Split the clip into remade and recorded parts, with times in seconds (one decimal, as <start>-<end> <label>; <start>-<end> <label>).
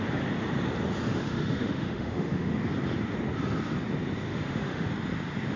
0.0-1.1 recorded; 1.1-2.6 remade; 2.6-4.3 recorded; 4.3-4.9 remade; 4.9-5.6 recorded